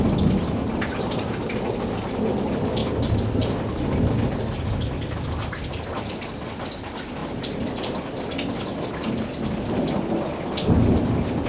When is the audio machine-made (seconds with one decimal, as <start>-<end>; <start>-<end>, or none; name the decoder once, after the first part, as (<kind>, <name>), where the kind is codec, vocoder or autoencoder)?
none